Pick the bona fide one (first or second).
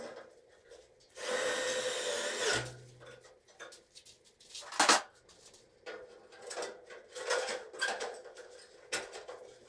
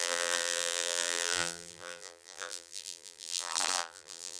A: first